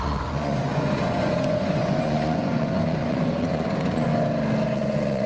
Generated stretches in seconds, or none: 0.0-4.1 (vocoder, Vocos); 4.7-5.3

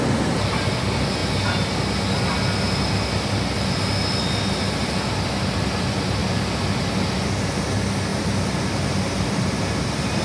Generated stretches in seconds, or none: 8.1-10.2 (vocoder, BigVGAN v2)